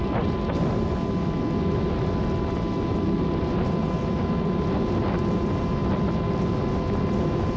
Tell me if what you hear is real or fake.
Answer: real